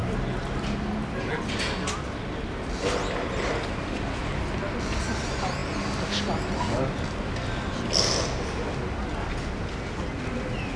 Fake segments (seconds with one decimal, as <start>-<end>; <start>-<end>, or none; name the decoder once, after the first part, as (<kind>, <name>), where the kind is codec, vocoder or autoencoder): none